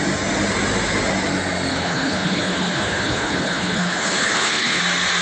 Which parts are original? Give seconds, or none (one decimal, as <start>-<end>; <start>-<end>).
0.0-1.7; 4.8-5.2